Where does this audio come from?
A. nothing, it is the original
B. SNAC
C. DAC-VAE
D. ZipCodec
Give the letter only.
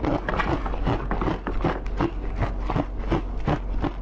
A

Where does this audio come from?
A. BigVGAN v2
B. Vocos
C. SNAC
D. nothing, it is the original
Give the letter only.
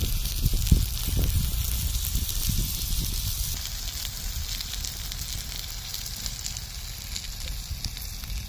D